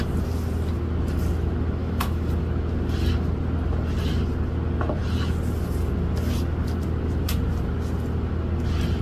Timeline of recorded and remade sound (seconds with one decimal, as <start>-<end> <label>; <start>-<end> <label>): 0.0-1.8 recorded; 1.8-2.3 remade; 2.3-9.0 recorded